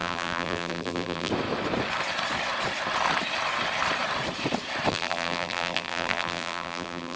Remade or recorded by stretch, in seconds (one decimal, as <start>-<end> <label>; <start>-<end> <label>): 0.0-1.3 remade; 1.3-4.9 recorded; 4.9-7.2 remade